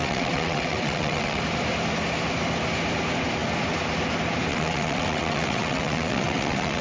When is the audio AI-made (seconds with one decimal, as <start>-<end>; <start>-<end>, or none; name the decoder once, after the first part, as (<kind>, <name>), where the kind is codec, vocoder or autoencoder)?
0.0-1.4 (vocoder, WaveNeXt); 4.5-6.8